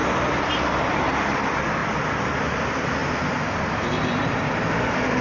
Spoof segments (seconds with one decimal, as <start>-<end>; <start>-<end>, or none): 0.0-3.0; 3.7-5.2